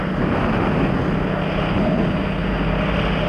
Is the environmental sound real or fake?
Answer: real